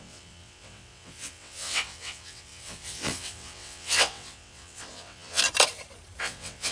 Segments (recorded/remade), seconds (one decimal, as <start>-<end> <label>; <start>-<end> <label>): 0.0-5.4 remade; 5.4-6.2 recorded; 6.2-6.7 remade